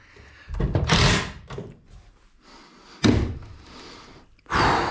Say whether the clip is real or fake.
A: real